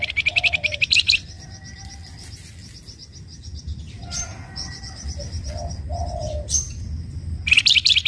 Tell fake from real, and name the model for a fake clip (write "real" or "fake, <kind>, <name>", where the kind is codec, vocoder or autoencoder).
fake, vocoder, BigVGAN v2